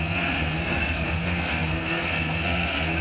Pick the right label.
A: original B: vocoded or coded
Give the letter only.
B